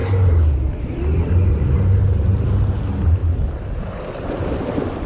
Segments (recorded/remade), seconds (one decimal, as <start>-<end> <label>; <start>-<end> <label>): 0.0-5.1 recorded